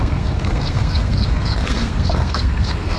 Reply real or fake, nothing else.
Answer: fake